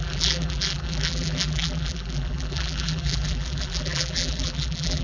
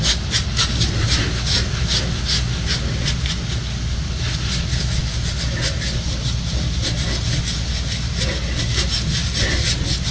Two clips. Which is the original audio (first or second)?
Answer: second